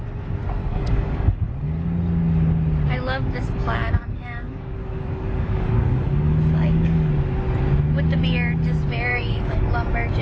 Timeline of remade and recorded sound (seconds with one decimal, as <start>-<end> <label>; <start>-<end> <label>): 0.0-0.6 recorded; 0.6-1.5 remade; 1.5-3.2 recorded; 3.2-7.1 remade; 7.1-9.1 recorded; 9.1-9.7 remade; 9.7-10.2 recorded